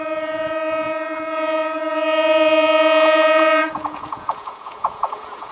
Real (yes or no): no